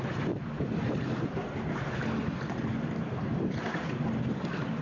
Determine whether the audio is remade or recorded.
recorded